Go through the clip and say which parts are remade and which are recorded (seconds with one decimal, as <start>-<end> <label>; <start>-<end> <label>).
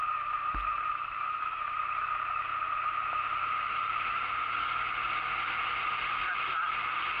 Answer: 0.0-7.2 recorded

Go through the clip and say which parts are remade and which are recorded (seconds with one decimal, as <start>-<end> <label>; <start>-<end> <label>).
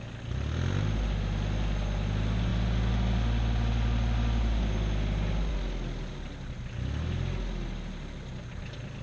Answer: 0.0-9.0 recorded